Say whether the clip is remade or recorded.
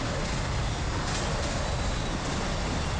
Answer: recorded